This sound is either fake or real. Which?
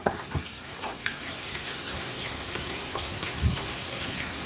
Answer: fake